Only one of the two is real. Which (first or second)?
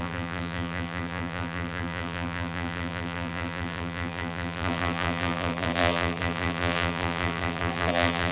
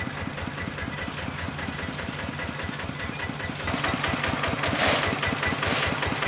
second